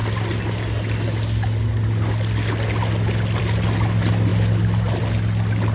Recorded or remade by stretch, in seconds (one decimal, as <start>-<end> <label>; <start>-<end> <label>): 0.0-5.7 recorded